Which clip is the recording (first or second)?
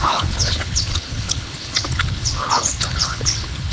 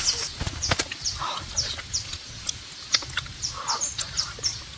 second